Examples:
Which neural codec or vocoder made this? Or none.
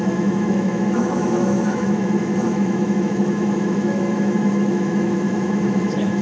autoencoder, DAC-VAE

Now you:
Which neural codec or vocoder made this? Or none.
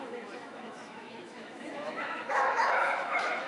autoencoder, DAC-VAE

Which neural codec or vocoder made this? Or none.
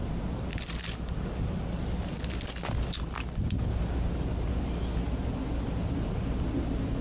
none